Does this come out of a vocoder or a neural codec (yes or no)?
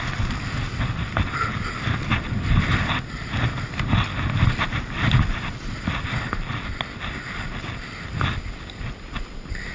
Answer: no